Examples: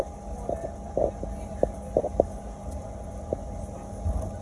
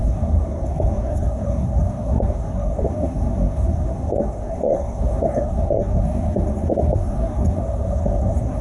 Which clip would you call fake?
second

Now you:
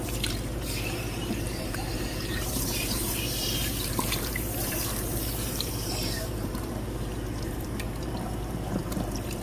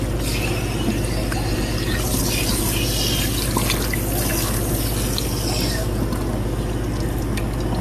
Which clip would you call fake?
first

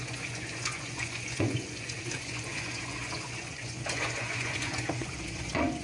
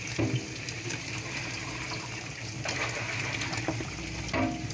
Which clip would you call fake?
first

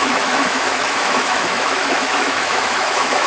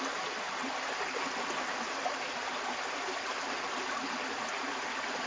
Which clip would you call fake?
first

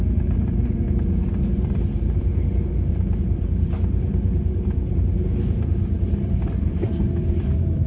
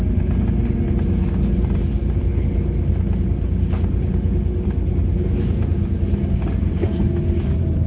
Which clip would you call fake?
first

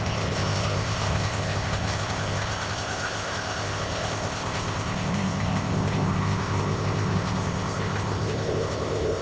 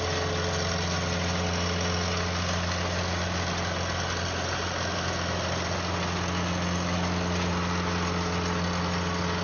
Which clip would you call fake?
first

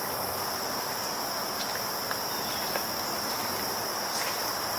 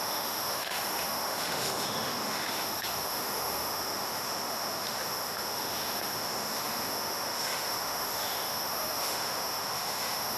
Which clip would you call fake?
second